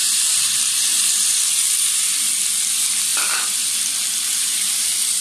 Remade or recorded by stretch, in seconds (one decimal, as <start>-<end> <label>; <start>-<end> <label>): 0.0-1.9 remade; 1.9-3.1 recorded; 3.1-3.7 remade; 3.7-5.2 recorded

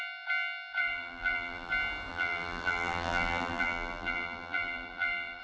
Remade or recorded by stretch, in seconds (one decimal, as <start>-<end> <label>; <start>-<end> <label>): 0.0-0.8 recorded; 0.8-1.7 remade; 1.7-2.1 recorded; 2.1-5.4 remade